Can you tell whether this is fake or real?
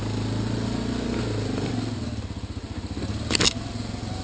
real